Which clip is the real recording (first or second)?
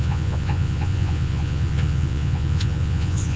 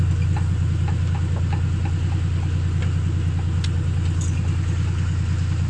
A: second